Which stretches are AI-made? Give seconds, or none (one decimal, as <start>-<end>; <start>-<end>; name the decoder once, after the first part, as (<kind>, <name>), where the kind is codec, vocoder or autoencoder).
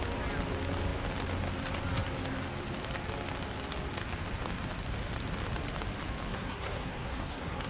6.3-7.7 (codec, SNAC)